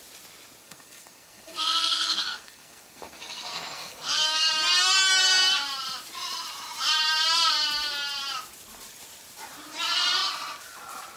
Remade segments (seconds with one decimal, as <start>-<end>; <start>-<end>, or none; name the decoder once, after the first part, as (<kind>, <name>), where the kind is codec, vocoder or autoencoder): 0.6-4.5 (codec, SNAC)